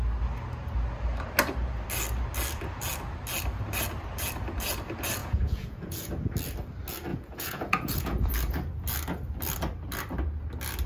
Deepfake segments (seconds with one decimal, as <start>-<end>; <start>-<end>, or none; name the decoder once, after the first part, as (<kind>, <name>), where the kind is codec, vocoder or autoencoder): 5.2-6.1 (vocoder, Vocos); 7.1-8.3